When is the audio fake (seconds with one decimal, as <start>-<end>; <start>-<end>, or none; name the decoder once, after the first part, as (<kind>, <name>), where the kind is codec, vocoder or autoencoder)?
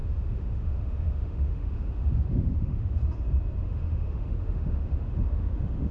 0.0-3.0 (autoencoder, DAC-VAE); 3.6-5.9